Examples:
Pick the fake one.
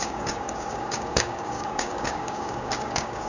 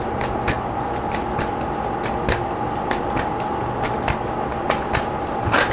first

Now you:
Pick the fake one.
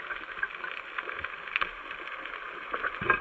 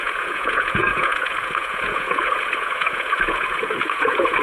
second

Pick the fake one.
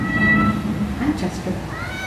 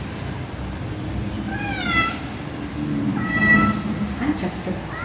second